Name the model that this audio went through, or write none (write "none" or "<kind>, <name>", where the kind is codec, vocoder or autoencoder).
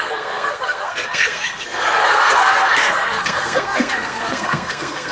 codec, SNAC